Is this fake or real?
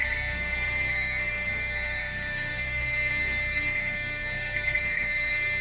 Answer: fake